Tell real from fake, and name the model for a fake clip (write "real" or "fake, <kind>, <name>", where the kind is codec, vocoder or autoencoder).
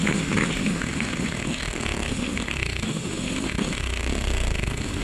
fake, autoencoder, DAC-VAE